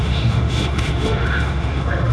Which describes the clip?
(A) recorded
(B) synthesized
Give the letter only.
B